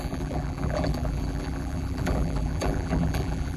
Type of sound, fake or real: fake